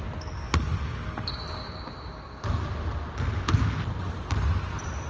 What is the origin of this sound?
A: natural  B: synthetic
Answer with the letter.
A